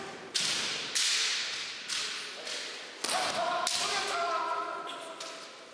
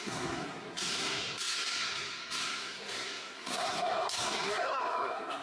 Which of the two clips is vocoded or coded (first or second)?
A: second